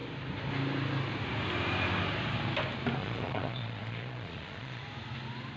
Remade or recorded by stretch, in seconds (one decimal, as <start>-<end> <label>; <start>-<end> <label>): 0.0-3.0 recorded; 3.0-4.8 remade; 4.8-5.6 recorded

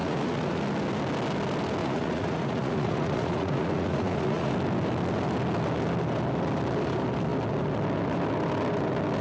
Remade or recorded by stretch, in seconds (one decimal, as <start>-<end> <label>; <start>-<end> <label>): 0.0-0.6 remade; 0.6-1.8 recorded; 1.8-4.5 remade; 4.5-9.2 recorded

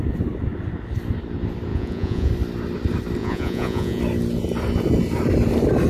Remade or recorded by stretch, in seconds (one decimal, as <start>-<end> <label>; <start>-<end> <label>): 0.0-1.7 recorded; 1.7-2.3 remade; 2.3-3.2 recorded; 3.2-4.0 remade; 4.0-5.9 recorded

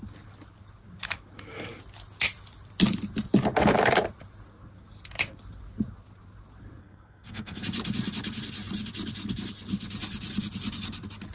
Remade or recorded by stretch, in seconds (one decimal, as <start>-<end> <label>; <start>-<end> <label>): 0.0-6.8 recorded; 6.8-7.6 remade; 7.6-11.3 recorded

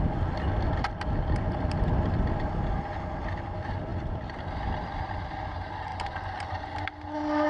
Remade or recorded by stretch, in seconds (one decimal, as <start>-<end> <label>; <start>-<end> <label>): 0.0-3.9 recorded; 3.9-5.5 remade; 5.5-7.5 recorded